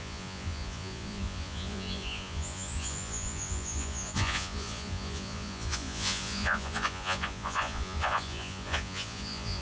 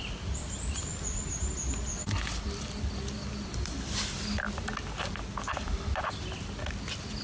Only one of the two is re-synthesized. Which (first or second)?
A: first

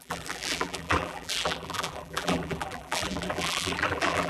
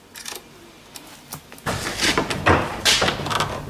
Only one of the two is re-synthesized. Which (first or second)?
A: first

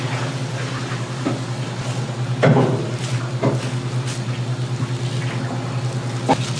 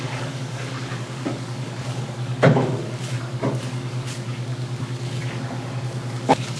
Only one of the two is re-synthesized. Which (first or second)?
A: second